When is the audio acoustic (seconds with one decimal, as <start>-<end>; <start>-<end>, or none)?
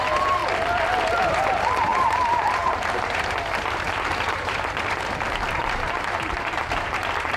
0.4-1.3